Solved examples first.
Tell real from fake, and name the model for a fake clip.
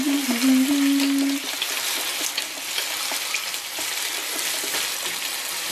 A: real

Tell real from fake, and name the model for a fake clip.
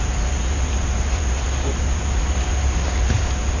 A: real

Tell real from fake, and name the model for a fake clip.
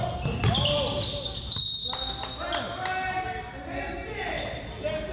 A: real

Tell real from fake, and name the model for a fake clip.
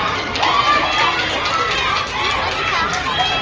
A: real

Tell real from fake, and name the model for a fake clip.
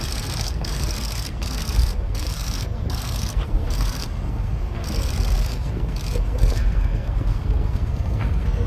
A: fake, codec, SNAC